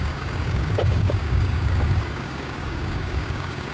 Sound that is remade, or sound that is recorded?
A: remade